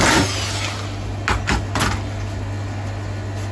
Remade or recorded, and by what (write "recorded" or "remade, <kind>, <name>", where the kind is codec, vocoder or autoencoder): recorded